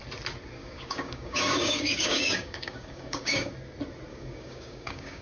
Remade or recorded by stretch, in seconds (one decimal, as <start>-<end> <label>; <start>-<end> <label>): 0.0-0.6 recorded; 0.6-3.5 remade; 3.5-4.1 recorded; 4.1-5.2 remade